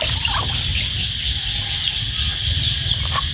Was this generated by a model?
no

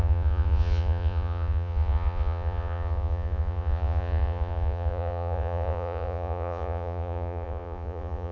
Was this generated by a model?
yes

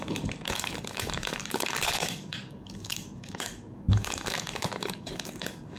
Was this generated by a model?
yes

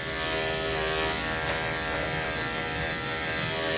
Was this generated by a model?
no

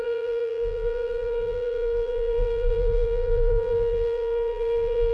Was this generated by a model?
yes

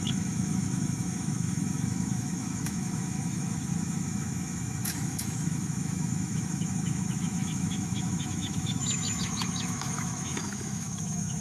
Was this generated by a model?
yes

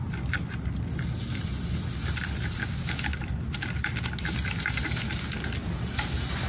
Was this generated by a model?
no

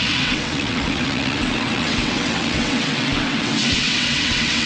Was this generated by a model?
yes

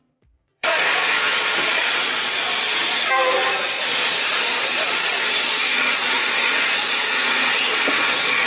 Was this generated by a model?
yes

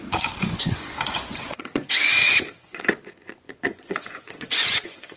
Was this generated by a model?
yes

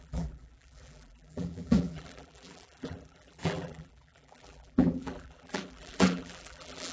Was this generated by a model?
yes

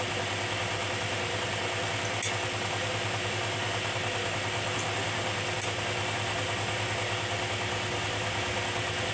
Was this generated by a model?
no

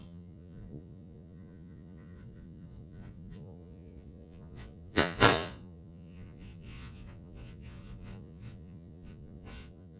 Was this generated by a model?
yes